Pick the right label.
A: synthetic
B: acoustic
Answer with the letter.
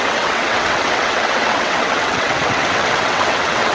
A